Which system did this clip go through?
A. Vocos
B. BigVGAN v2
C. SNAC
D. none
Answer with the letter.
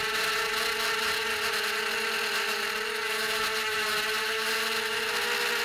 D